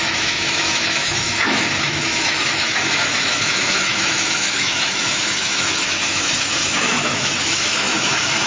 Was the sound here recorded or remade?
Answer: remade